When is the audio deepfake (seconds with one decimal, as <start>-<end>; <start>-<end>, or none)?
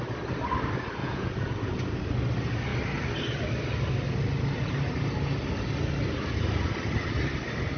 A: 1.0-1.8